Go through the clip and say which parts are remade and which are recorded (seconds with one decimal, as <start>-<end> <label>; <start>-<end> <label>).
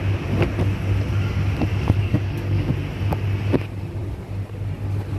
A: 0.0-1.7 recorded; 1.7-2.7 remade; 2.7-5.2 recorded